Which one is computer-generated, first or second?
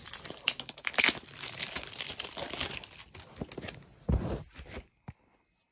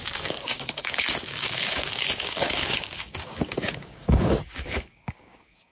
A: second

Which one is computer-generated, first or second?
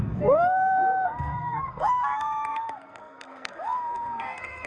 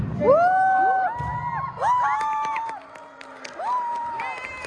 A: first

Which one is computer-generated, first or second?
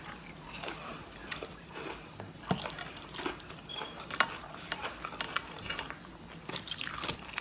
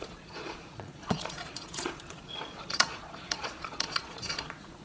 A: second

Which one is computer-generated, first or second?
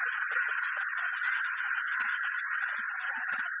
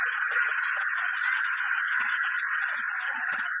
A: first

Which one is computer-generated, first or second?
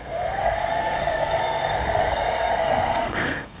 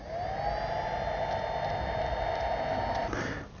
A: first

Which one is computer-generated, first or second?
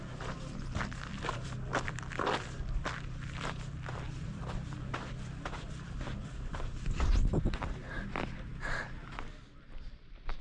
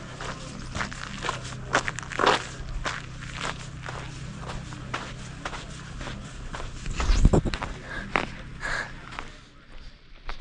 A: first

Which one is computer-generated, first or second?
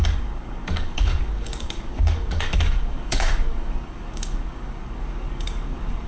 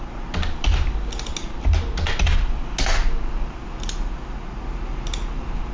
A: first